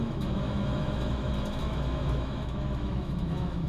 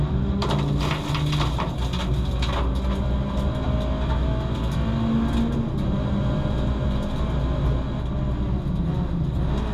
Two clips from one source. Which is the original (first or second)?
second